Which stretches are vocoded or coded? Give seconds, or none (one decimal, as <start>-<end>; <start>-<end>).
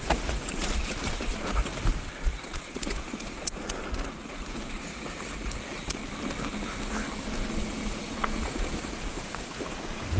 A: 0.0-1.7; 2.3-6.0; 7.5-10.2